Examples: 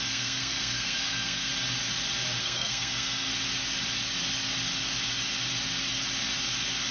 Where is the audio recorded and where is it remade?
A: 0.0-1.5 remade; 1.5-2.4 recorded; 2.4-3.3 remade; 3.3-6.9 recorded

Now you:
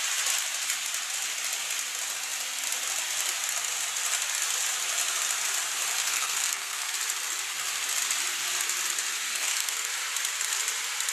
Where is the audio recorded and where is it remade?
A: 0.0-6.0 recorded; 6.0-6.9 remade; 6.9-9.3 recorded; 9.3-9.9 remade; 9.9-11.1 recorded

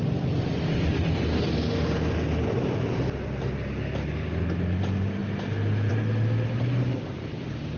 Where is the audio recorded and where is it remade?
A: 0.0-7.8 recorded

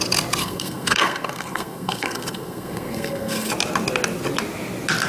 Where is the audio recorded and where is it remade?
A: 0.0-0.4 recorded; 0.4-3.5 remade; 3.5-5.1 recorded

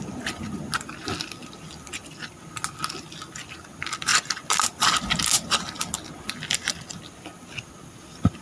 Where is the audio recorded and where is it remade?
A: 0.0-8.4 recorded